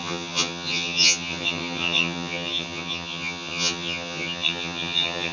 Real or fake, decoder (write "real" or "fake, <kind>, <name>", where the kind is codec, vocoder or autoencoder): fake, vocoder, HiFi-GAN